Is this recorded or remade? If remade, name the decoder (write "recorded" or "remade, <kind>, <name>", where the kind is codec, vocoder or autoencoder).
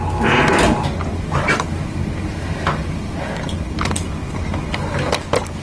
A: recorded